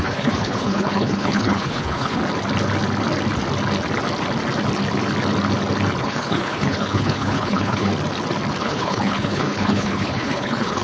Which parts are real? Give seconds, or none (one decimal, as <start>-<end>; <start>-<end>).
2.2-6.0; 7.9-8.6